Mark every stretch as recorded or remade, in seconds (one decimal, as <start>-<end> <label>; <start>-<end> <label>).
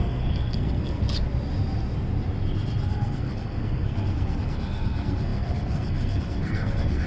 0.0-1.0 remade; 1.0-2.9 recorded; 2.9-7.1 remade